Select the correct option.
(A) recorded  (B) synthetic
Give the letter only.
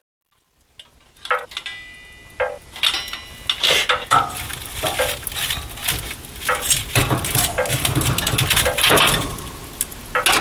A